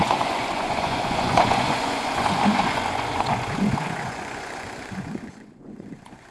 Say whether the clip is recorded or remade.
remade